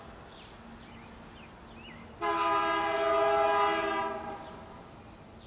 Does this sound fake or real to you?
real